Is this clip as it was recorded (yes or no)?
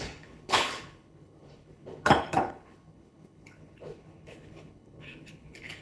no